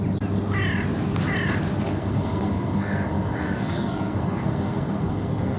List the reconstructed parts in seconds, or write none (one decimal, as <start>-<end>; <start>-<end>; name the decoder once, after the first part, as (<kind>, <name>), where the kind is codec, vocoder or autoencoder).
1.9-5.6 (codec, SNAC)